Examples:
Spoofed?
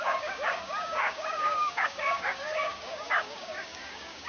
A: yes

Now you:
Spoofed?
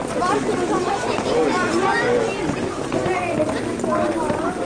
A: no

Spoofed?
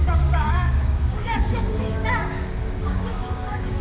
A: yes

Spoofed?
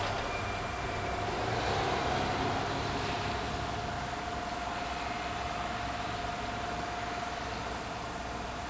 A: no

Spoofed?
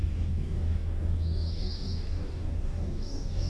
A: yes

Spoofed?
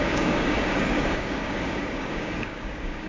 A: yes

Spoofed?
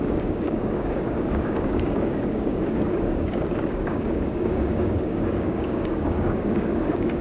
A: yes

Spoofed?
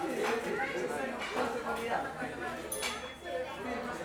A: no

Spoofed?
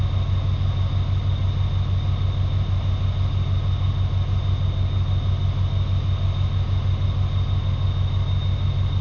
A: no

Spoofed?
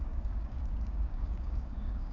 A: yes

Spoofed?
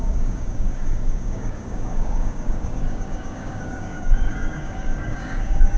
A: yes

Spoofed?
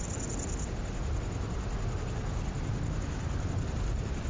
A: no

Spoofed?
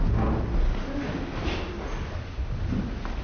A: no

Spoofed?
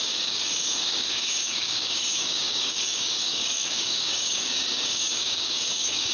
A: yes